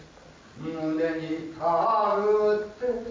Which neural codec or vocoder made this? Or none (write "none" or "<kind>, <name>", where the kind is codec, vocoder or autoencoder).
none